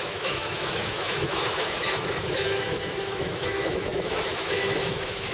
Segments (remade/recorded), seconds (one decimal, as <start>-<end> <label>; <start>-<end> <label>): 0.0-5.3 remade